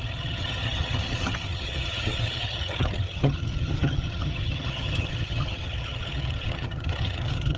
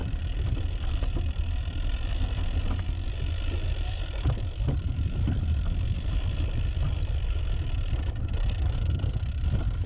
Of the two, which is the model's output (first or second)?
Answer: first